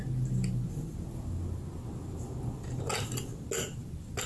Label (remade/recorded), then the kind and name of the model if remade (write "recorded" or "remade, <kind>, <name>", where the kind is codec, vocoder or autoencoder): recorded